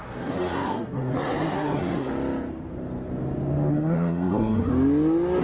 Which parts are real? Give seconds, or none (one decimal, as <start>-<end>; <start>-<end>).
2.1-3.7; 4.7-5.4